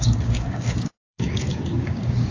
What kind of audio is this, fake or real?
fake